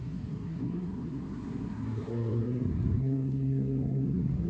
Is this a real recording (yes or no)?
no